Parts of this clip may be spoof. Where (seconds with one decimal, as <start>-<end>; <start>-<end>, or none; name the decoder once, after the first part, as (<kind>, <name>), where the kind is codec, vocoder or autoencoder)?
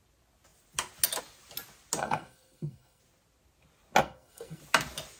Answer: 2.0-3.0 (codec, SNAC); 4.0-4.6